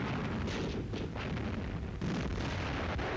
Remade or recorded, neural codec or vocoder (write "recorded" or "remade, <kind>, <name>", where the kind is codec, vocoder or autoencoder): recorded